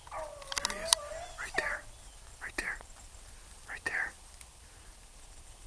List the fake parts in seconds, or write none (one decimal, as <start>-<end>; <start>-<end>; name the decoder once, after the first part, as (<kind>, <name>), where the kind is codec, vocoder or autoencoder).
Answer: none